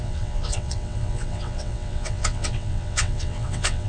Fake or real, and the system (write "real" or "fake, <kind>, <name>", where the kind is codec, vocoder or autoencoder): fake, vocoder, WaveNeXt